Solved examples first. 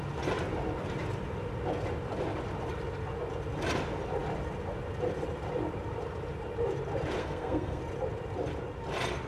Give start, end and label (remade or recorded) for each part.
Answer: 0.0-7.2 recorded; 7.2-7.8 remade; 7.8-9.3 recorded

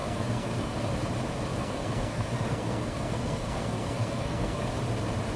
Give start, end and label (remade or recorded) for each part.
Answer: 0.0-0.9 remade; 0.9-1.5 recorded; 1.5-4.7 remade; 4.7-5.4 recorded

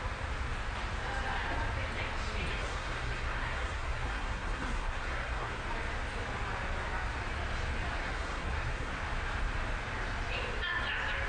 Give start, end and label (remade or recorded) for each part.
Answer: 0.0-2.5 recorded; 2.5-5.6 remade; 5.6-8.0 recorded; 8.0-8.9 remade; 8.9-11.3 recorded

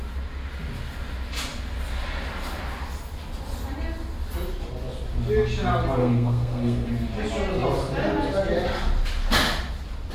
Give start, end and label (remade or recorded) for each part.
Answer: 0.0-6.0 recorded; 6.0-6.9 remade; 6.9-10.1 recorded